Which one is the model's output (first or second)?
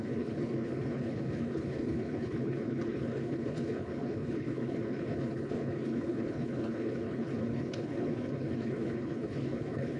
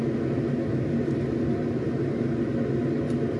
first